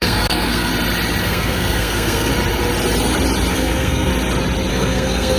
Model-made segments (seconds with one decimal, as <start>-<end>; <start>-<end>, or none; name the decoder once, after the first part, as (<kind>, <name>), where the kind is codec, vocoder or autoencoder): 0.0-0.7 (codec, SNAC); 1.2-2.3; 3.5-4.1; 4.7-5.4